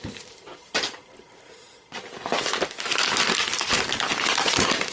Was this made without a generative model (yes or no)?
yes